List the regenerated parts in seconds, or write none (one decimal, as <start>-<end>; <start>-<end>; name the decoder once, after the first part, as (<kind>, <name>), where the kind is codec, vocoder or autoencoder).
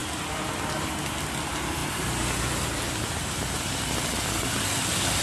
1.8-2.3 (vocoder, BigVGAN v2)